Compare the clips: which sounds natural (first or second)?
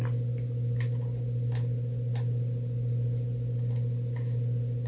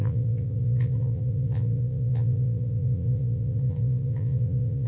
first